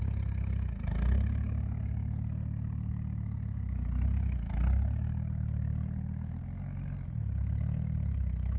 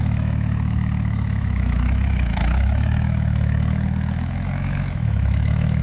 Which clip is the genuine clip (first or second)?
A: first